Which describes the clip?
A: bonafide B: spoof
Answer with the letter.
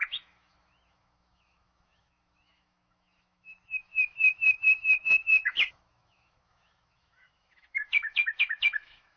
B